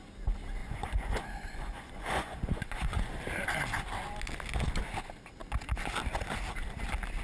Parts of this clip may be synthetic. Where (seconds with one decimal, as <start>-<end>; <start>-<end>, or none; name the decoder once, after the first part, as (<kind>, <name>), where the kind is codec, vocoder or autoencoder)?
0.6-3.2 (vocoder, Vocos)